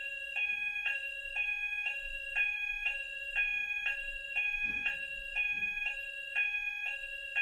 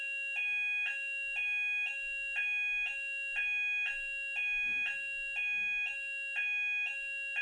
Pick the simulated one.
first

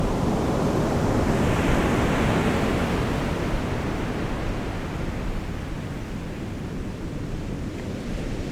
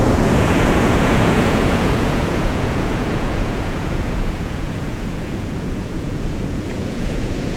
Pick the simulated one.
second